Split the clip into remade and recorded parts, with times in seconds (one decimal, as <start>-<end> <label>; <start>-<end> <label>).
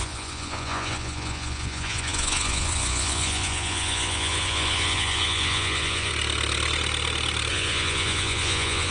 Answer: 0.0-6.1 remade; 6.1-7.5 recorded; 7.5-8.9 remade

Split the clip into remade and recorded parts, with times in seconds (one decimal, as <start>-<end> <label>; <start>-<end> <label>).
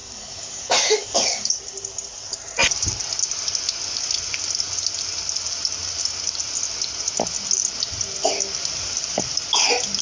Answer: 0.0-1.6 remade; 1.6-10.0 recorded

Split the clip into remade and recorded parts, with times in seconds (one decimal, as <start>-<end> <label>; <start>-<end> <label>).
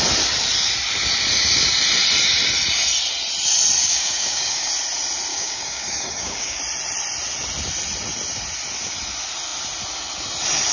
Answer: 0.0-3.8 recorded; 3.8-4.7 remade; 4.7-5.3 recorded; 5.3-6.6 remade; 6.6-10.7 recorded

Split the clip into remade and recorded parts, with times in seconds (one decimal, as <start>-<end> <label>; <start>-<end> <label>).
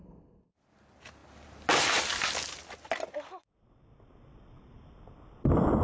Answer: 0.0-5.8 recorded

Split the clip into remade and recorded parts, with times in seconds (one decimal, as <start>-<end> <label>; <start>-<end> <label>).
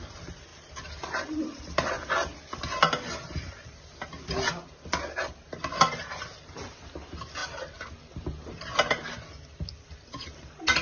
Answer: 0.0-10.8 recorded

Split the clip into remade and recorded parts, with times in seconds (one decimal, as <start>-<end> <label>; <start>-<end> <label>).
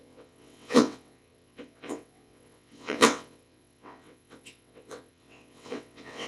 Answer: 0.0-6.3 remade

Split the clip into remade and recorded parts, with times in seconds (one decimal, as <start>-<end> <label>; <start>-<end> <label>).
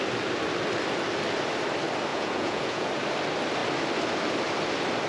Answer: 0.0-2.1 recorded; 2.1-2.9 remade; 2.9-5.1 recorded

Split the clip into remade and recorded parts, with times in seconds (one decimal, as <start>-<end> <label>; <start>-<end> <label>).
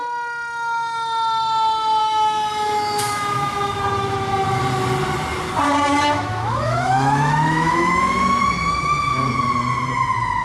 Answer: 0.0-2.0 recorded; 2.0-4.6 remade; 4.6-5.9 recorded; 5.9-9.3 remade; 9.3-10.4 recorded